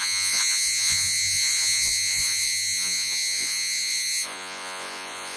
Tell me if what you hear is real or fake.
fake